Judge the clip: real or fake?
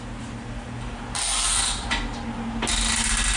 real